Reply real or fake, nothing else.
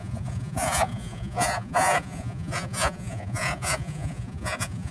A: fake